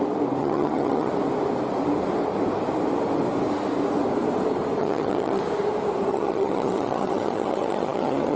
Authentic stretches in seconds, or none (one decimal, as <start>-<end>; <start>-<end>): 0.0-0.4; 1.1-4.8; 5.4-6.1